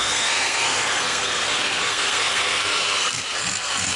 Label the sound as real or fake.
fake